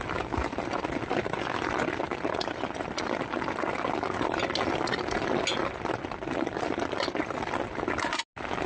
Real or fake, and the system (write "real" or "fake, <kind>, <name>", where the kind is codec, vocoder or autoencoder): real